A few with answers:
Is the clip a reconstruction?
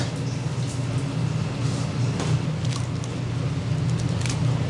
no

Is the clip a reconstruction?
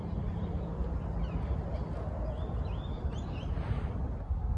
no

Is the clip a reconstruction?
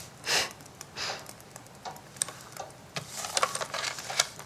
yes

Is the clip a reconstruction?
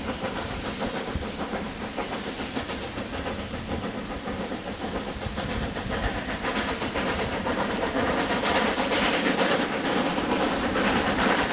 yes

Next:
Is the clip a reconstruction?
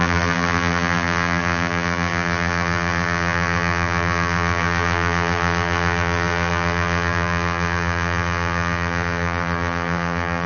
yes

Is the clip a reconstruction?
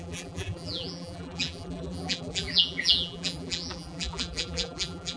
yes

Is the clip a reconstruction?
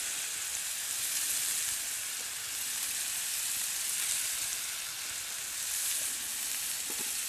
no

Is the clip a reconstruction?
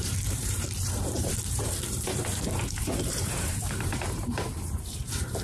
yes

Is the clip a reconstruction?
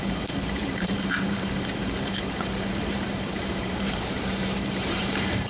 yes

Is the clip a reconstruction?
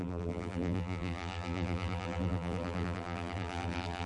yes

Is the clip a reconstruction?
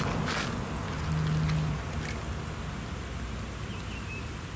no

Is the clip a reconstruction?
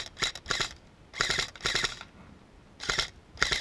no